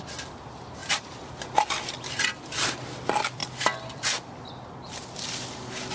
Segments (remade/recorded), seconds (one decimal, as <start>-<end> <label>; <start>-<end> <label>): 0.0-0.8 recorded; 0.8-2.4 remade; 2.4-3.4 recorded; 3.4-5.4 remade; 5.4-5.9 recorded